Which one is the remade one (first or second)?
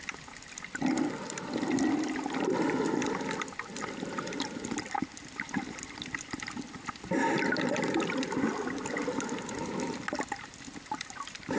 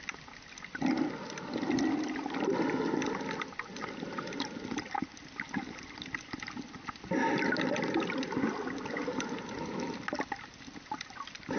first